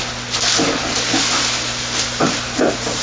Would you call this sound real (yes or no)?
yes